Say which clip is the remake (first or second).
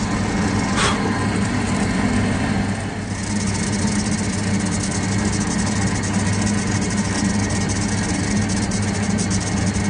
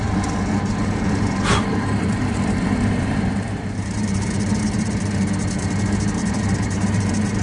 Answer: second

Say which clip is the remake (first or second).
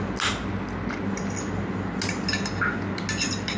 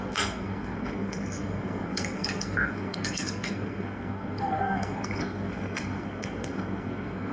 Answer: second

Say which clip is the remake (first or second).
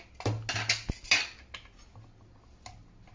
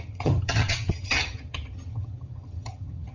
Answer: second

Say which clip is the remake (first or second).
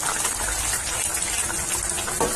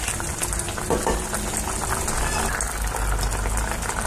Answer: first